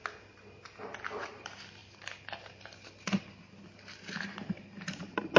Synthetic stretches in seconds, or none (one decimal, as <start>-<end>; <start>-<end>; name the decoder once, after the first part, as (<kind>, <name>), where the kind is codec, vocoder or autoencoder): none

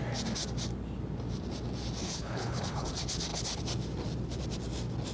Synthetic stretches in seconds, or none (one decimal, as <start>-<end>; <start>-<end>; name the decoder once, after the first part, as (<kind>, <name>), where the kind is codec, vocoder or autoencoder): 2.0-2.9 (codec, HILCodec)

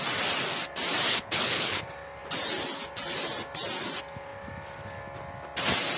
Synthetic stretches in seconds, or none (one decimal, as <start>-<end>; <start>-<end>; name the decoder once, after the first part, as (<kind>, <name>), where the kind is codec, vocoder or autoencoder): 1.1-1.8 (codec, HILCodec)

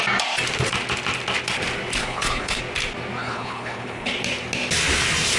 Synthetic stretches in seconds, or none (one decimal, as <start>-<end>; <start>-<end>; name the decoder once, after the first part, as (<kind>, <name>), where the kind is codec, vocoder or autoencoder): 2.0-2.6 (codec, HILCodec); 3.2-4.1